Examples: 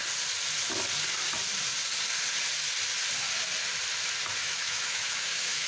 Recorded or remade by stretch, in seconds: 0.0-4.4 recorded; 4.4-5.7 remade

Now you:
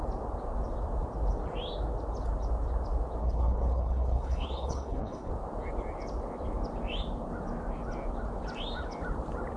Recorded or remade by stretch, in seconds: 0.0-3.2 recorded; 3.2-5.3 remade; 5.3-9.6 recorded